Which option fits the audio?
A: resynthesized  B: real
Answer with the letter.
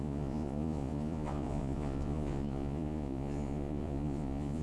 A